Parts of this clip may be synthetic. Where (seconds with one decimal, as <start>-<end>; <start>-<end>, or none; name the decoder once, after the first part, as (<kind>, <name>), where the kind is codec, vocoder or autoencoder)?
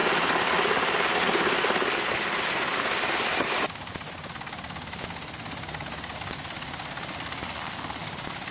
none